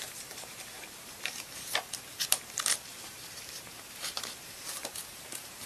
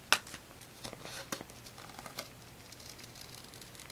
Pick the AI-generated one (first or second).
first